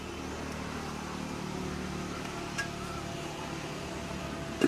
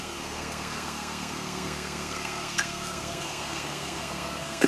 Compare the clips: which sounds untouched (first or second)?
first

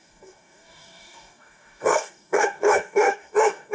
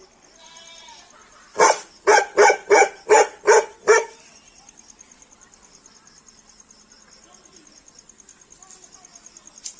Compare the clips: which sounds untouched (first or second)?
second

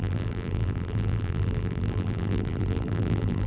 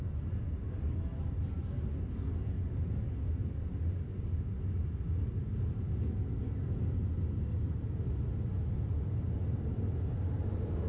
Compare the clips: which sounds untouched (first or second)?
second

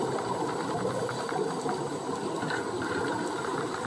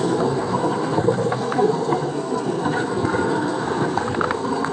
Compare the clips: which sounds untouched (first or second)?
first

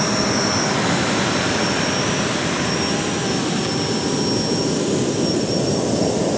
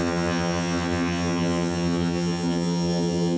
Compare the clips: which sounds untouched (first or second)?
first